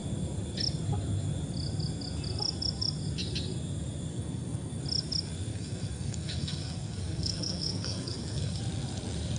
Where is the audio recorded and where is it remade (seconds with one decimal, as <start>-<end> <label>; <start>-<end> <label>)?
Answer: 0.0-4.1 recorded; 4.1-4.8 remade; 4.8-5.5 recorded; 5.5-8.6 remade; 8.6-9.4 recorded